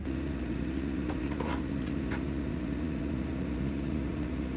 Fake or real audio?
fake